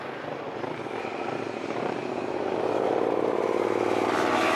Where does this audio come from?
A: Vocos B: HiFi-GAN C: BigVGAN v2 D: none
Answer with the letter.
D